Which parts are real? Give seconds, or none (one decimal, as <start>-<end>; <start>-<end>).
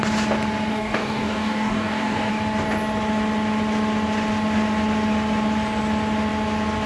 0.0-0.7; 2.3-6.9